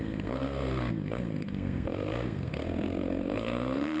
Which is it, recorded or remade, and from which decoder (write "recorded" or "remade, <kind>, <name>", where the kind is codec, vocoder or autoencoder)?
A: remade, codec, SNAC